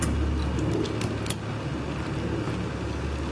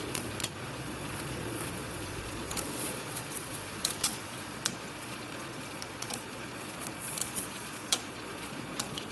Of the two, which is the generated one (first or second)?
second